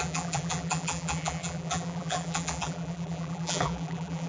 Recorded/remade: remade